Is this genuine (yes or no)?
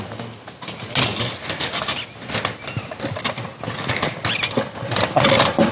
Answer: yes